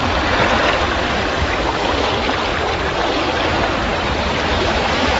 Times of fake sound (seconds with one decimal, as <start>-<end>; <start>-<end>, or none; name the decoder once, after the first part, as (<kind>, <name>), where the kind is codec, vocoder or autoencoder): 4.5-5.2 (autoencoder, DAC-VAE)